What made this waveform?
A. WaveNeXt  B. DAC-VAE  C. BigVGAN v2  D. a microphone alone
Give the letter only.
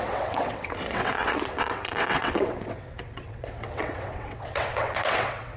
A